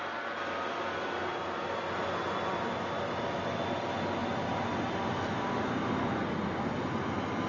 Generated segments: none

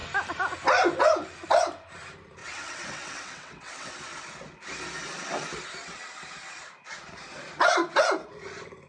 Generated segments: 2.4-3.9